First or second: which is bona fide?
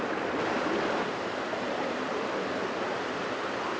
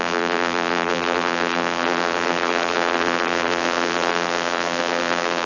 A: first